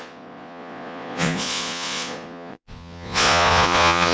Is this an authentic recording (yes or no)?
no